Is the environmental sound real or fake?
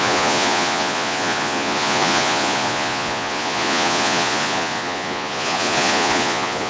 fake